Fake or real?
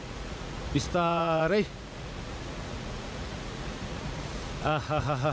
fake